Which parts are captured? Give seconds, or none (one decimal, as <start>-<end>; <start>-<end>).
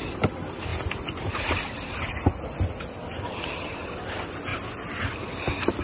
0.0-5.8